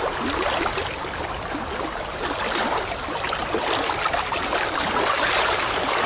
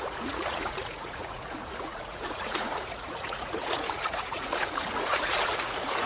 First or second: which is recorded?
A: first